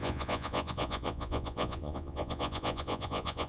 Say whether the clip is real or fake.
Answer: fake